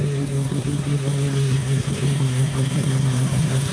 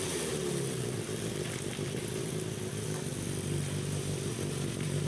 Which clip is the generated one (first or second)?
first